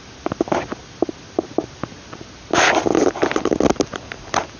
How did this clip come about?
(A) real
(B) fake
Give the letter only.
A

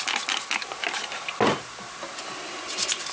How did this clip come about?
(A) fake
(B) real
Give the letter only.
B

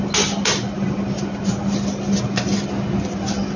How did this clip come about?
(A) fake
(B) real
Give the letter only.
B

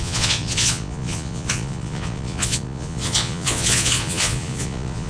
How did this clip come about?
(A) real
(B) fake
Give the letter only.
B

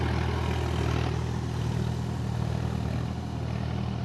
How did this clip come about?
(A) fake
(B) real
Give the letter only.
B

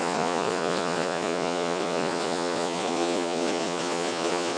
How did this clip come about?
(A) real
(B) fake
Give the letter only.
B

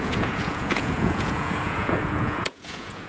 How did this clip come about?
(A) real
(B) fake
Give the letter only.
B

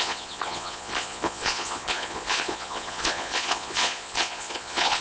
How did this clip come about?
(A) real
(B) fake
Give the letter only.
B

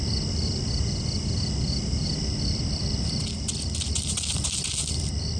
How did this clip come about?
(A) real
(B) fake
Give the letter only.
A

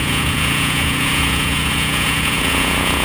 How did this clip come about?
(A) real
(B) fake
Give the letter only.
B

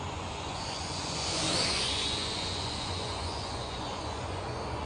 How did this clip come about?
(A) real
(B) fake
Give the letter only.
B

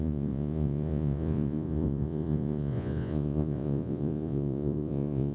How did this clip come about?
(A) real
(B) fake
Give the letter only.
B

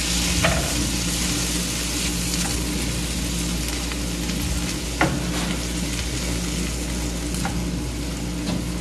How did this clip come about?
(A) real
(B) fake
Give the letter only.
A